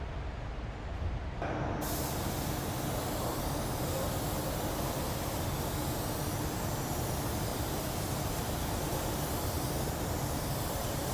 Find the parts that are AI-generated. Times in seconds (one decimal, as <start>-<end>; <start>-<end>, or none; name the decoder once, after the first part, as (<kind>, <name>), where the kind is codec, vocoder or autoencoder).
7.5-8.9 (vocoder, BigVGAN v2)